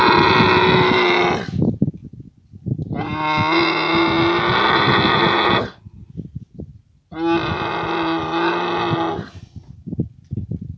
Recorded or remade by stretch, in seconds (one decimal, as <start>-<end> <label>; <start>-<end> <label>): 0.0-10.8 recorded